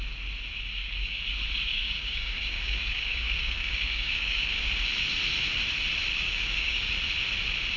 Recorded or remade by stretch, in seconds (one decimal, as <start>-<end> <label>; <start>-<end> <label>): 0.0-0.7 recorded; 0.7-1.2 remade; 1.2-1.7 recorded; 1.7-4.6 remade; 4.6-6.1 recorded; 6.1-6.9 remade; 6.9-7.8 recorded